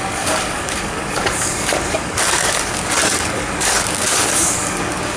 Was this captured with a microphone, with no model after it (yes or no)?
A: no